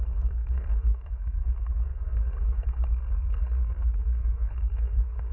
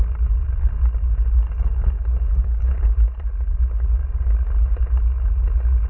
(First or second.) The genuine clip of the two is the second